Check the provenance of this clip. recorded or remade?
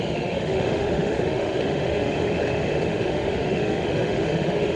remade